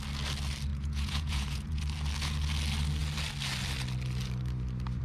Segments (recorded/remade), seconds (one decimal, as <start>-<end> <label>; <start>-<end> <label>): 0.0-0.7 recorded; 0.7-1.8 remade; 1.8-5.0 recorded

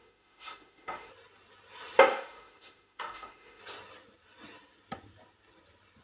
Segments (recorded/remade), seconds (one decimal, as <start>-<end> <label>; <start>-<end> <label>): 0.0-1.1 remade; 1.1-2.1 recorded; 2.1-3.6 remade; 3.6-6.0 recorded

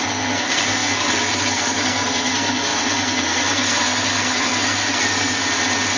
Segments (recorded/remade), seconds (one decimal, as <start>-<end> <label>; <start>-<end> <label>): 0.0-5.4 remade; 5.4-6.0 recorded